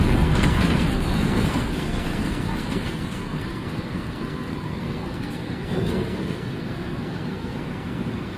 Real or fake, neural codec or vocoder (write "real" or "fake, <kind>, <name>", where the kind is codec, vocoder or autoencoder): fake, codec, SNAC